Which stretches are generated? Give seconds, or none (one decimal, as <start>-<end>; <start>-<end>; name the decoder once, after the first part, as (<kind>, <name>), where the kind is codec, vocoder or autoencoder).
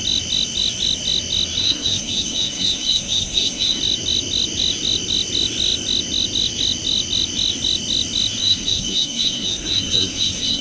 1.6-3.8 (codec, SNAC); 8.4-10.6